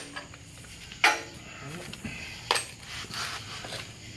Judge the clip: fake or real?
real